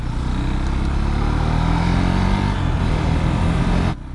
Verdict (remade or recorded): recorded